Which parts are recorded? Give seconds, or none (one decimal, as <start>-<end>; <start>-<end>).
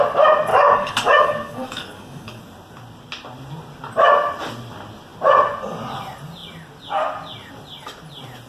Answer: 0.0-0.5; 2.4-8.5